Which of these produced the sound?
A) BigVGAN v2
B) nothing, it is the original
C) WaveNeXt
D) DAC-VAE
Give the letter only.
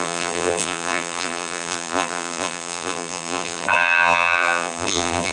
A